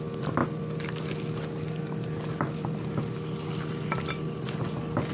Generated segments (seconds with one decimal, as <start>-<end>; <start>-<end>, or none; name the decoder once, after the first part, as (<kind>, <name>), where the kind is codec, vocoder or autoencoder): none